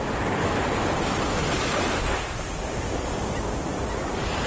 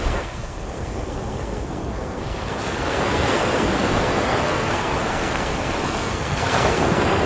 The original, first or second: first